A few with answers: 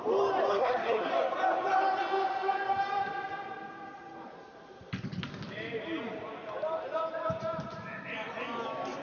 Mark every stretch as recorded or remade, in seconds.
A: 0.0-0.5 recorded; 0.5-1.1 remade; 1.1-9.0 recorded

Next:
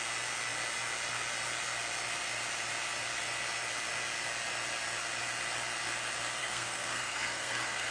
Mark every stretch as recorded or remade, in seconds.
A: 0.0-6.4 recorded; 6.4-7.9 remade

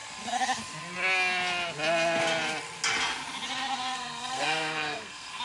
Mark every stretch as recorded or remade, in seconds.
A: 0.0-3.7 recorded; 3.7-5.4 remade

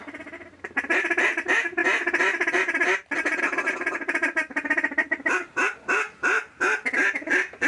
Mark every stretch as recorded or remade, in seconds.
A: 0.0-7.7 recorded

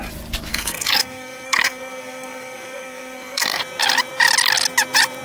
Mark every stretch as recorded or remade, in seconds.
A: 0.0-0.5 recorded; 0.5-3.6 remade; 3.6-5.2 recorded

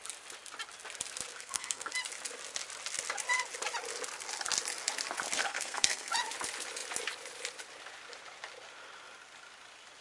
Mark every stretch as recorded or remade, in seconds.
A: 0.0-1.3 recorded; 1.3-1.9 remade; 1.9-5.4 recorded; 5.4-6.1 remade; 6.1-10.0 recorded

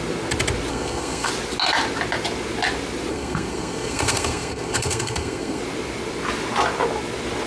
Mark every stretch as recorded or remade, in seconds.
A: 0.0-0.7 recorded; 0.7-1.3 remade; 1.3-3.1 recorded; 3.1-5.6 remade; 5.6-7.5 recorded